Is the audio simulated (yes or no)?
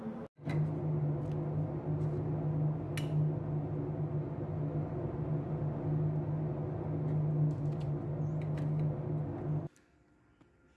no